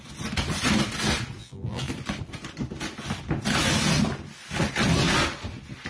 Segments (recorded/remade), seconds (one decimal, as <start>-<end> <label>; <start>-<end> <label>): 0.0-1.4 recorded; 1.4-1.9 remade; 1.9-5.9 recorded